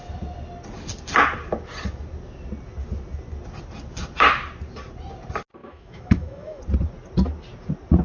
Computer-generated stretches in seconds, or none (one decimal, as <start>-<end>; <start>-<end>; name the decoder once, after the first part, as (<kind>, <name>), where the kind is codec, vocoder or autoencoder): 5.6-6.6 (autoencoder, DAC-VAE)